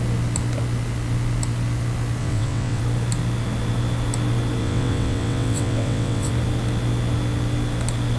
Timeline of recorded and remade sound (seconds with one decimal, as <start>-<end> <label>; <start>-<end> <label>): 0.0-2.2 recorded; 2.2-2.8 remade; 2.8-4.6 recorded; 4.6-6.3 remade; 6.3-8.2 recorded